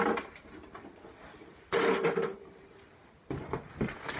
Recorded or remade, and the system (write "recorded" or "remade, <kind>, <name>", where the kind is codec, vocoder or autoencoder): recorded